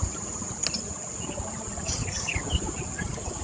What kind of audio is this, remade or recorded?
recorded